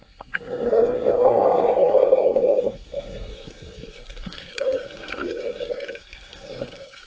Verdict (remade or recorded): remade